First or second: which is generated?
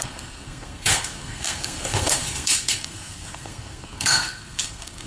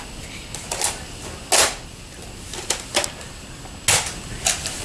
first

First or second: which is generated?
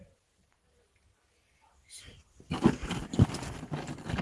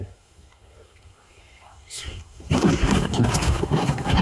second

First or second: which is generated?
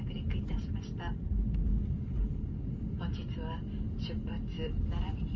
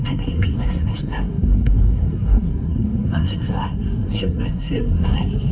second